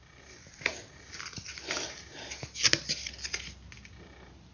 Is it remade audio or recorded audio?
recorded